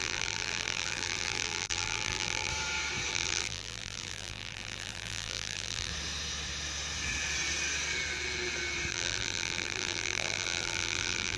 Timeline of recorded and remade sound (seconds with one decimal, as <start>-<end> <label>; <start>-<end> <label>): 0.0-2.5 remade; 2.5-3.1 recorded; 3.1-5.9 remade; 5.9-8.9 recorded; 8.9-11.4 remade